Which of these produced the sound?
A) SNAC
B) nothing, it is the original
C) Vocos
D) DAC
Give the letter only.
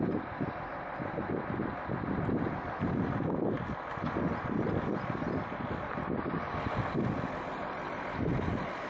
B